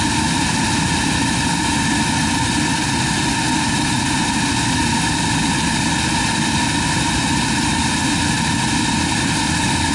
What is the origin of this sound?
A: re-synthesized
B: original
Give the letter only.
B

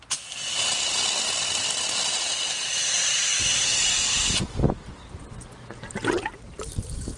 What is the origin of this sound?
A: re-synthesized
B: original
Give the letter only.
B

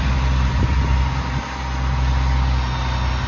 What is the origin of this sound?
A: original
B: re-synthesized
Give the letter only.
A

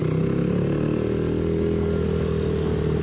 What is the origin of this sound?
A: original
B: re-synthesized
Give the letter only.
A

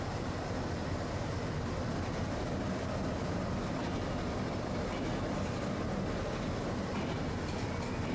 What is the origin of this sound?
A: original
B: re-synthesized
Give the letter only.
A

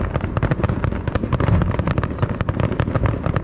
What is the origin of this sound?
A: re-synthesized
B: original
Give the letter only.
B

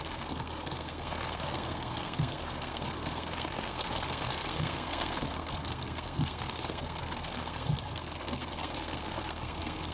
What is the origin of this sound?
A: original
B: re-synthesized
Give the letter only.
B